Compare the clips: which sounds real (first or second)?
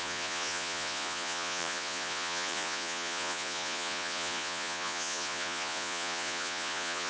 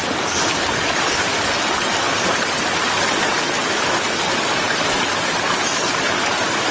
second